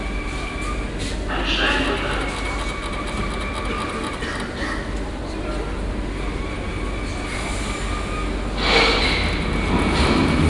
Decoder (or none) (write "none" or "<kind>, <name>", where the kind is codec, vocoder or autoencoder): none